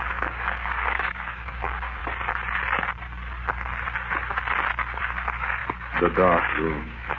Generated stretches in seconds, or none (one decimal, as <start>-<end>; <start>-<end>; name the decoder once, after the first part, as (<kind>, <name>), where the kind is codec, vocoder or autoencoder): 0.0-2.0 (codec, DAC); 5.0-5.6; 6.4-7.2